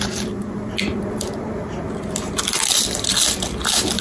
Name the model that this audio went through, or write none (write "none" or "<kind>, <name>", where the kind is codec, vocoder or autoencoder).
vocoder, BigVGAN v2